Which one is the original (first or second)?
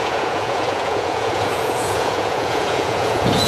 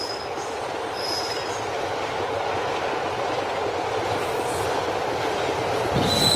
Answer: second